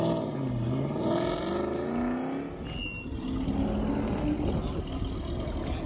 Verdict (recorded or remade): recorded